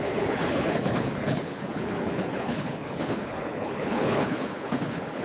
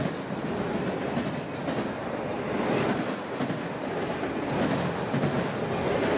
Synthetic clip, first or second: first